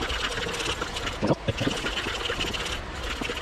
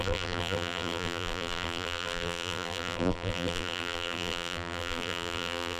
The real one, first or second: first